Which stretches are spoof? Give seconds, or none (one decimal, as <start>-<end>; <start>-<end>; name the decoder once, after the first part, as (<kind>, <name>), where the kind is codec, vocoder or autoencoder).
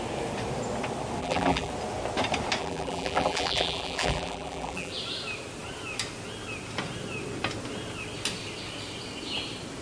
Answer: 1.2-1.7 (vocoder, BigVGAN v2); 2.6-4.9